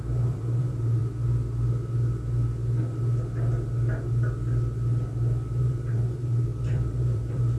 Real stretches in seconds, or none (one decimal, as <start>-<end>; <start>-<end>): 1.0-5.6